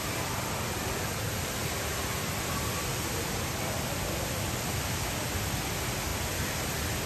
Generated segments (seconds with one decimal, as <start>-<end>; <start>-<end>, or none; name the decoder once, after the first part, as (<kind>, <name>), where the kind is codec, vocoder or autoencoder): none